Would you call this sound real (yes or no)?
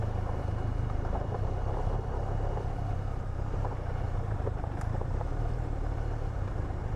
no